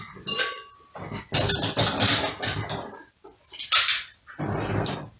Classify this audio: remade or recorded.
recorded